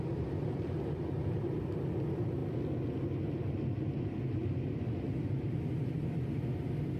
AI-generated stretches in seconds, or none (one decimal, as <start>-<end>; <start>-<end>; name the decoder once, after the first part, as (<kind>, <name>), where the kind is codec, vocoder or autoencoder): none